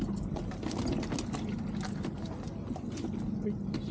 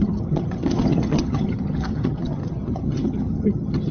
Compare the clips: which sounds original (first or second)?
first